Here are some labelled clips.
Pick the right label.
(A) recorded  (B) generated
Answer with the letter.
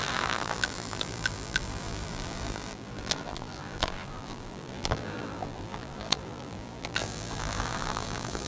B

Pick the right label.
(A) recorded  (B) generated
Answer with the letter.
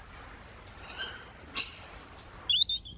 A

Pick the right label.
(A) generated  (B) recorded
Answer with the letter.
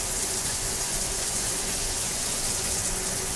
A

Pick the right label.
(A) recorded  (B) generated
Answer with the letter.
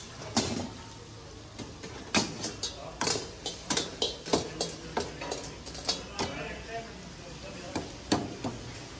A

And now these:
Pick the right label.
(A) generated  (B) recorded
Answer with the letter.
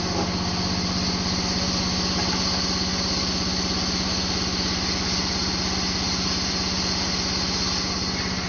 B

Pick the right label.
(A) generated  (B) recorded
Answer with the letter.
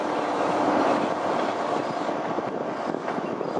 B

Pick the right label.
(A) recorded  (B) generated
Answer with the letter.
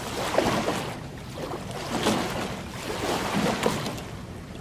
A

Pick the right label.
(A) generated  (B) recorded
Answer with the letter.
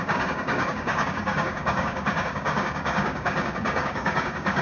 A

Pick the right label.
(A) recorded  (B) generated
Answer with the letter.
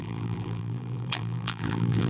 B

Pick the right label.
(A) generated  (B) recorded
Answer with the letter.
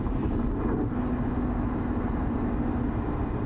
B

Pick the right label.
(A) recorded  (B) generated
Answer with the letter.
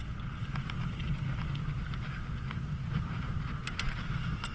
A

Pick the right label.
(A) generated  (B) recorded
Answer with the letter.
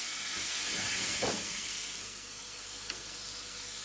A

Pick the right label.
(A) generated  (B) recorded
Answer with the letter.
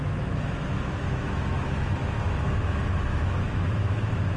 A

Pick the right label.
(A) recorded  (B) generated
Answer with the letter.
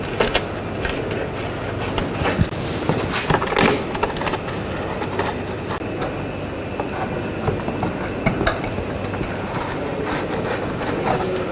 A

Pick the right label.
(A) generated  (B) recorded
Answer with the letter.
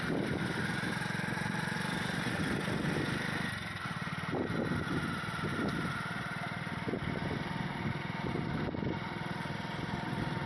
B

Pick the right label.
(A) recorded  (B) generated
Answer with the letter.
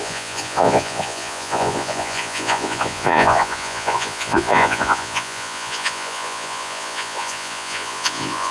B